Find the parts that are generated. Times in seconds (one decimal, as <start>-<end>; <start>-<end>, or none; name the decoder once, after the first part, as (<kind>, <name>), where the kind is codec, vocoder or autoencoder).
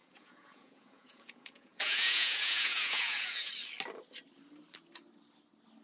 0.0-3.5 (vocoder, Vocos)